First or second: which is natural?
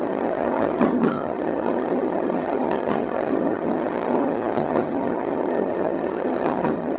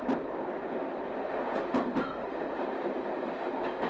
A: second